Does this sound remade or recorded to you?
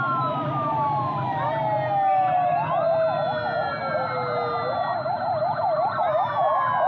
recorded